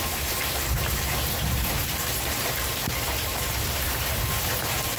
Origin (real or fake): fake